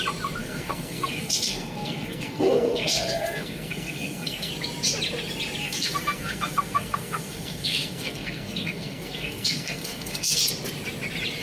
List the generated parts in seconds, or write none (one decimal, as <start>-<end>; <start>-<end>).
0.4-4.5; 5.6-10.4